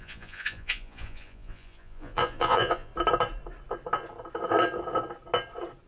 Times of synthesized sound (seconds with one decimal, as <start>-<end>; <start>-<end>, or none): 0.0-2.9